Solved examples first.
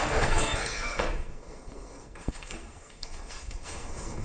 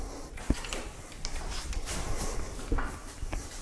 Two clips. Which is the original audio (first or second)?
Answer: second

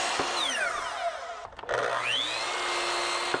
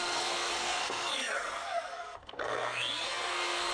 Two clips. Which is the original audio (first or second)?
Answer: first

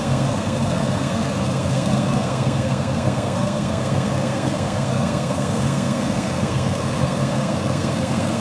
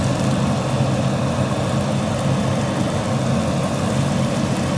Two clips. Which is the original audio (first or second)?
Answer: second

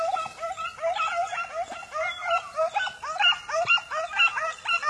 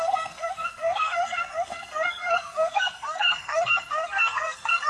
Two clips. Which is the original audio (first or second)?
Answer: first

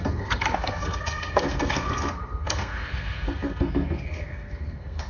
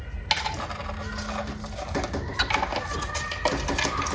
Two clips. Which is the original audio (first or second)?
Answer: second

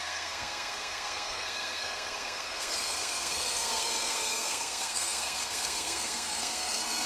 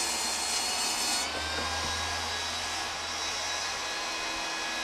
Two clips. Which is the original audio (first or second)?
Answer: second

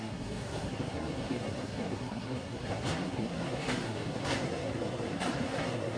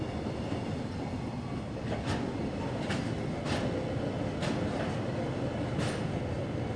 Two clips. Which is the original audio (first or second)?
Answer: second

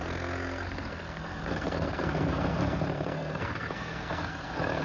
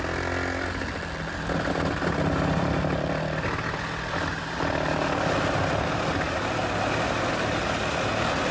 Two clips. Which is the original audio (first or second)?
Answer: second